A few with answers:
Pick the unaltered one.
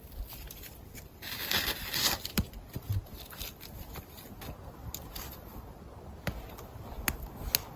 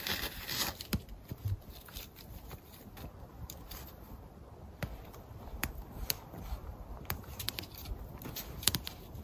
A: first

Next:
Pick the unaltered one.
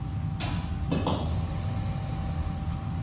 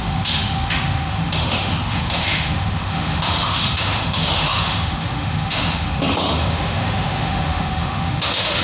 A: first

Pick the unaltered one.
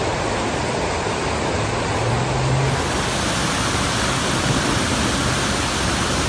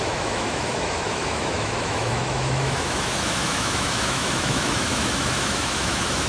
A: first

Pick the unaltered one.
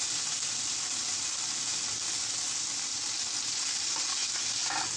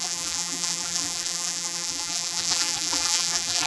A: first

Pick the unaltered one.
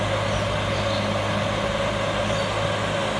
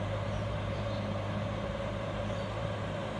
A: first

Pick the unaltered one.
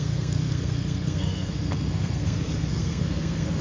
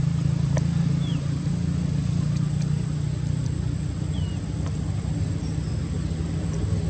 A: second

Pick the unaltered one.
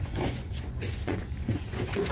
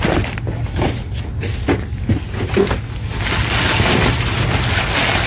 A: second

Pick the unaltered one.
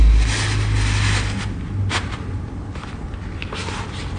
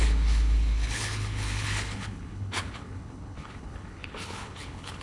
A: first